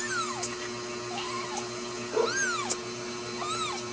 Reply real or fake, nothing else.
real